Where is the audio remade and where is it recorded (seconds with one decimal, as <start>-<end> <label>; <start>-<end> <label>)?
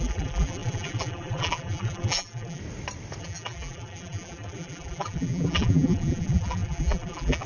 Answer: 0.0-2.6 remade; 2.6-3.2 recorded; 3.2-7.5 remade